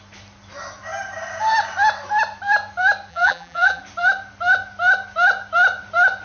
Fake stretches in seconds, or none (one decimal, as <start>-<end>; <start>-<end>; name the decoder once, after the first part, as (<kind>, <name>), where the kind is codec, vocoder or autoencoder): 3.1-3.8 (vocoder, BigVGAN v2)